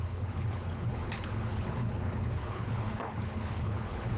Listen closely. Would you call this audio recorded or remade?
remade